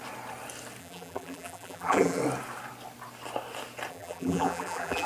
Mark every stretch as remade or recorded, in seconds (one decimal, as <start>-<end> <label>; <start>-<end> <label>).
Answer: 0.0-0.8 recorded; 0.8-2.2 remade; 2.2-3.9 recorded; 3.9-5.1 remade